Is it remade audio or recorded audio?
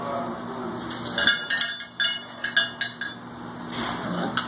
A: recorded